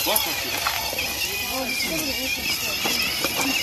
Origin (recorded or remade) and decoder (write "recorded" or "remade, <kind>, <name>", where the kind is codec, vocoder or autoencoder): recorded